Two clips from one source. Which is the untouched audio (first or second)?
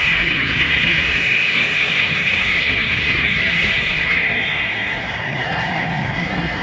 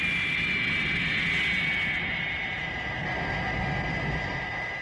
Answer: second